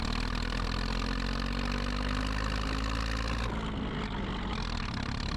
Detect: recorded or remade recorded